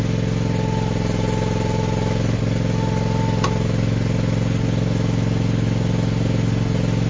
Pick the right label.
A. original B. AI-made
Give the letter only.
A